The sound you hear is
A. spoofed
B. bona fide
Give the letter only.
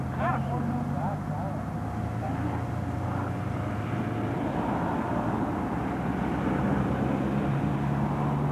B